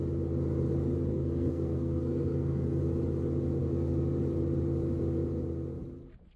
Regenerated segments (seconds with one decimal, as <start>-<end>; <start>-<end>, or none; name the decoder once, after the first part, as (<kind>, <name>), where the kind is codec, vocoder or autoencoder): 1.1-2.8 (codec, SNAC)